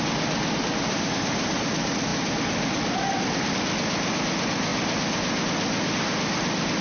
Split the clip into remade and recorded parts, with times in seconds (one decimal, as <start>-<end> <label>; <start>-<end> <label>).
0.0-6.8 recorded